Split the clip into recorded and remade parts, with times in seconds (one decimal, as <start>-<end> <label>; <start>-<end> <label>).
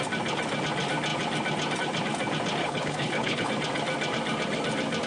0.0-2.6 recorded; 2.6-3.5 remade; 3.5-5.1 recorded